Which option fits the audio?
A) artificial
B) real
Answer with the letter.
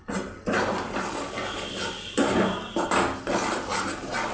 B